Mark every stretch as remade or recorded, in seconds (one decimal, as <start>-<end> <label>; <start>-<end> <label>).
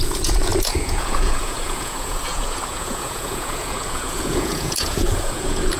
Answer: 0.0-5.8 remade